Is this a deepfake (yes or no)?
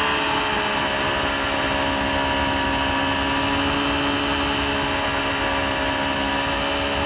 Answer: no